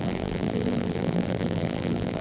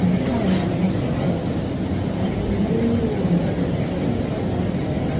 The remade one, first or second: first